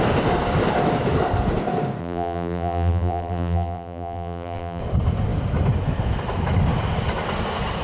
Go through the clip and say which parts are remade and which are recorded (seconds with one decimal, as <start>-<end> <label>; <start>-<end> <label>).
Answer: 0.0-2.0 recorded; 2.0-4.8 remade; 4.8-7.8 recorded